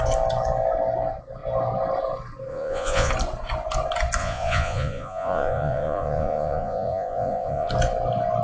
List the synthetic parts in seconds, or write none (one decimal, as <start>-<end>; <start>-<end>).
2.5-3.1; 4.2-7.7